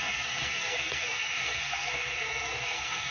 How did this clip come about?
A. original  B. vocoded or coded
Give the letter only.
B